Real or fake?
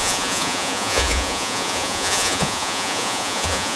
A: fake